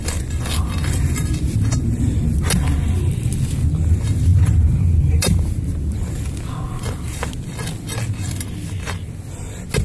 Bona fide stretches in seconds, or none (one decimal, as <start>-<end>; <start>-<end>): 0.0-4.3; 6.1-9.8